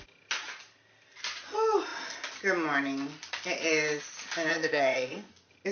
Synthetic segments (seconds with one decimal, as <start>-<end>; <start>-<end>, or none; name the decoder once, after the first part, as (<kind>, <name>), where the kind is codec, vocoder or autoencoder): 4.5-5.3 (codec, ZipCodec)